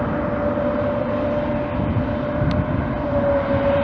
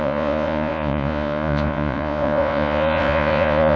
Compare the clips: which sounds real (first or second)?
first